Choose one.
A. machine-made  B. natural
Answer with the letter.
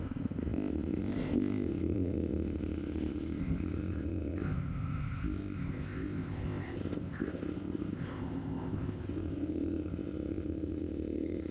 A